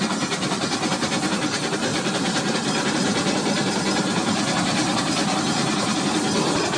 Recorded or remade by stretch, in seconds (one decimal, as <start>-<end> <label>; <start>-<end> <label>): 0.0-1.9 recorded; 1.9-6.0 remade; 6.0-6.8 recorded